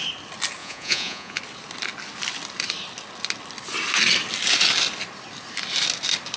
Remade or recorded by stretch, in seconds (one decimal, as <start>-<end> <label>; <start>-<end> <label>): 0.0-0.6 recorded; 0.6-1.4 remade; 1.4-6.4 recorded